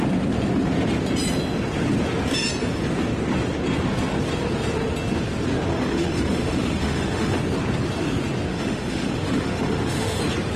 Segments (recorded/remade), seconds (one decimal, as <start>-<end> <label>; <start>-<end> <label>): 0.0-5.7 recorded; 5.7-7.4 remade; 7.4-8.5 recorded; 8.5-10.2 remade; 10.2-10.6 recorded